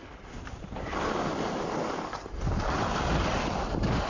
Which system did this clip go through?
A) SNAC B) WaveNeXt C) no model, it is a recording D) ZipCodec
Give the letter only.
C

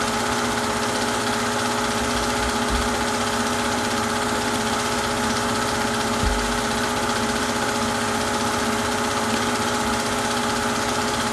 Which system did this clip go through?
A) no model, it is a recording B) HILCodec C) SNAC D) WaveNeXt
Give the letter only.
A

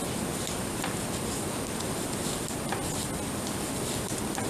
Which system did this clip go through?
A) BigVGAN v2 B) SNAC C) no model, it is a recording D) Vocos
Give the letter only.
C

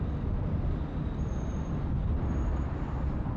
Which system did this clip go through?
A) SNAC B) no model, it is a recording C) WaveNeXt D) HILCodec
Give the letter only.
B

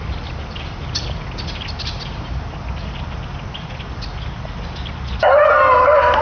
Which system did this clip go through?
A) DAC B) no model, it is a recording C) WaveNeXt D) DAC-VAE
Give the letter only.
B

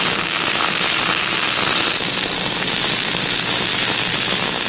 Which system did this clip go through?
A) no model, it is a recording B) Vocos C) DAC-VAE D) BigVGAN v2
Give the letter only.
A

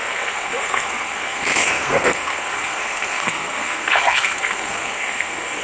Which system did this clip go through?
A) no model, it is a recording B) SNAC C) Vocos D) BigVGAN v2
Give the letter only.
B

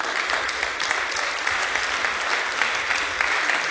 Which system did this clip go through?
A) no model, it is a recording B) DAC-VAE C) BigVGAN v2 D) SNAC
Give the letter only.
A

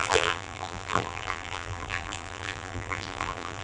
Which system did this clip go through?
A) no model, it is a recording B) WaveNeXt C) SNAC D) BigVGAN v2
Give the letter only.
D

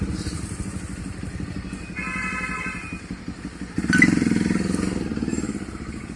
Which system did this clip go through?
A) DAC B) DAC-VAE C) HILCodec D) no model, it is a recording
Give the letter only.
D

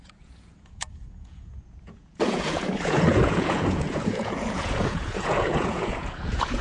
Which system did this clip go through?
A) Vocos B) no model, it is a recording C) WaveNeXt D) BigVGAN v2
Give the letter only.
A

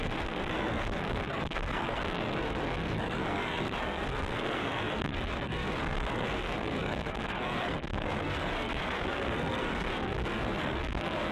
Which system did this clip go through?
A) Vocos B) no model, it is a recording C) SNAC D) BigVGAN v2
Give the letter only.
C